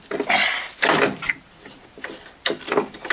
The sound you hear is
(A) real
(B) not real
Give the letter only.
A